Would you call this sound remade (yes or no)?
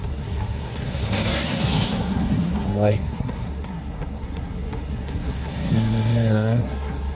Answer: yes